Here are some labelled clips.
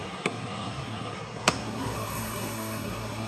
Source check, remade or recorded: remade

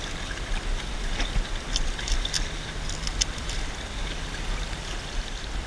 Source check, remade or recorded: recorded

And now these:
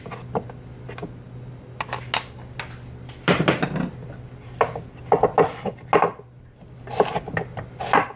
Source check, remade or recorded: recorded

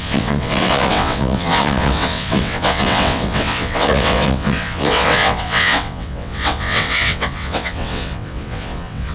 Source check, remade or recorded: remade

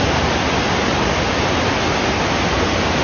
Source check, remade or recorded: recorded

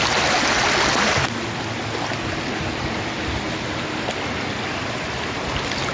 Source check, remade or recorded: recorded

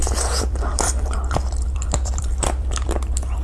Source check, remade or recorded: remade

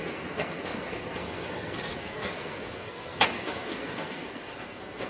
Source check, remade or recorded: remade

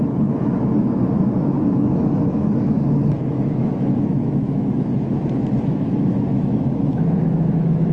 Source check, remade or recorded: remade